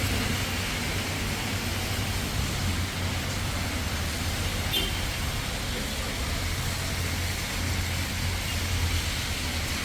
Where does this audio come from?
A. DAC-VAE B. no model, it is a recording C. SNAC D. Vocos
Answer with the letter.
B